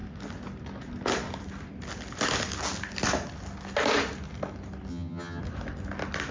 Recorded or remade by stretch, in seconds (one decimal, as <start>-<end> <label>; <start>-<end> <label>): 0.0-4.9 recorded; 4.9-5.4 remade; 5.4-6.3 recorded